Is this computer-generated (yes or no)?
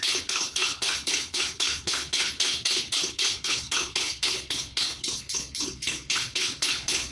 yes